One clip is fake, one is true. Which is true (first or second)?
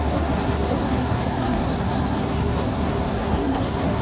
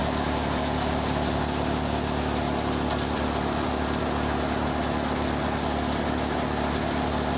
second